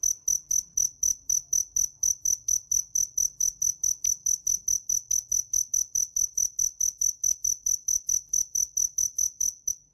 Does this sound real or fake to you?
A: real